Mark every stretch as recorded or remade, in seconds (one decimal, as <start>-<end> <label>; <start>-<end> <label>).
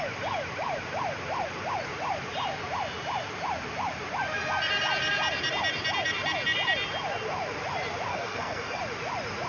0.0-8.1 recorded; 8.1-8.8 remade; 8.8-9.5 recorded